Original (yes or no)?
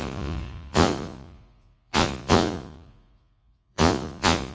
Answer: no